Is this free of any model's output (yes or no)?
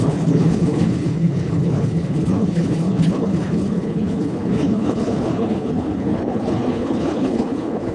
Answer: no